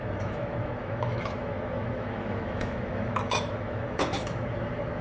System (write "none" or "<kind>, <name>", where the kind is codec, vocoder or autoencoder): autoencoder, DAC-VAE